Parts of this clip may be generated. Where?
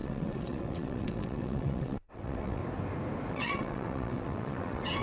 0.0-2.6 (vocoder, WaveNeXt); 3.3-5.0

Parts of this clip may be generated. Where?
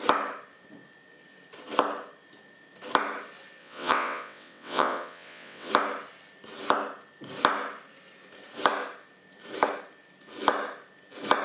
3.6-5.7 (vocoder, WaveNeXt)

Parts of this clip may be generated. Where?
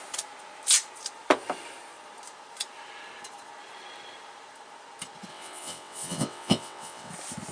5.3-7.1 (vocoder, WaveNeXt)